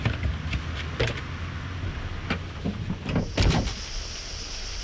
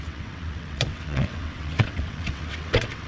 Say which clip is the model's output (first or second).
second